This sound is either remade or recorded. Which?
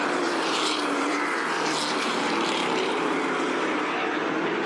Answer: remade